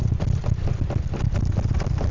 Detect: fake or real real